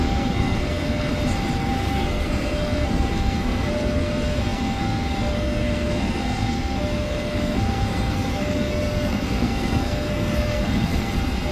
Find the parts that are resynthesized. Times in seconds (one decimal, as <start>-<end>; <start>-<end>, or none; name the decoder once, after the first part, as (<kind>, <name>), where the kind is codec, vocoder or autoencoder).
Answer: 0.0-1.1 (codec, SNAC); 1.6-11.5